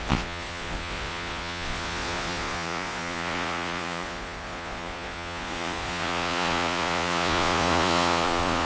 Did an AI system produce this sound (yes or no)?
yes